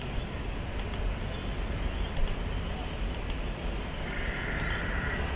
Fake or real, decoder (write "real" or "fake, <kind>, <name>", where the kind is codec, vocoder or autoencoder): real